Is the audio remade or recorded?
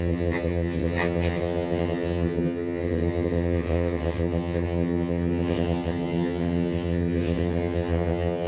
remade